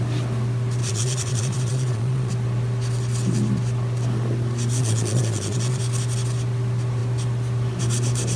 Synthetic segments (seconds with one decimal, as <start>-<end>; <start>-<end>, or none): 0.8-2.3; 4.8-5.8